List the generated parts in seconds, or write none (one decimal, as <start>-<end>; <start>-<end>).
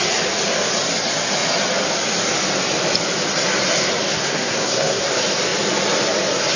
4.1-5.1